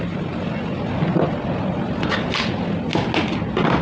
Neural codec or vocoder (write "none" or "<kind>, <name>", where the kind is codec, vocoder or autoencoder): none